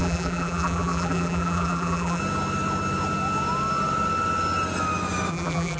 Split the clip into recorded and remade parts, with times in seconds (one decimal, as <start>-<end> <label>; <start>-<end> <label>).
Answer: 0.0-2.2 remade; 2.2-5.3 recorded; 5.3-5.8 remade